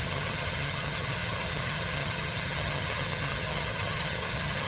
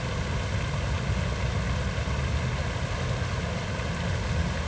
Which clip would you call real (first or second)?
second